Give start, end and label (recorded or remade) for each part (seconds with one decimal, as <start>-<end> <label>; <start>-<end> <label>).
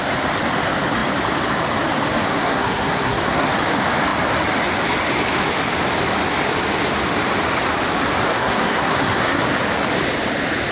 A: 0.0-2.3 recorded; 2.3-3.5 remade; 3.5-8.3 recorded; 8.3-9.4 remade; 9.4-10.7 recorded